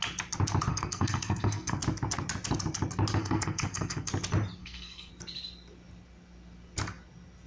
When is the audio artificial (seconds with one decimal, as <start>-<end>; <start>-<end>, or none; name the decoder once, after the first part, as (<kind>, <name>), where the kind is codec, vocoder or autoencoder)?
0.7-1.8 (codec, SNAC); 3.2-4.1; 4.6-5.1